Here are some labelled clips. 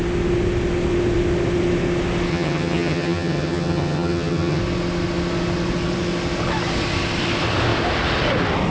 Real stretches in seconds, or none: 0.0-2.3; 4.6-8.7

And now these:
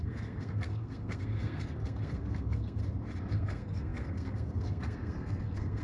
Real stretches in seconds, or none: 2.8-3.3

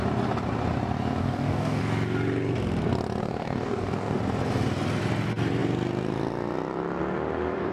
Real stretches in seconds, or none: 0.0-1.2; 1.8-3.2; 4.2-7.7

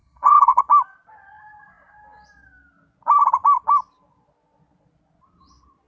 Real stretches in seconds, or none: 0.6-5.9